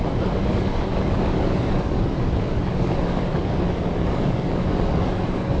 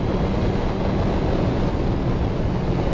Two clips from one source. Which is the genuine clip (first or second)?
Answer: second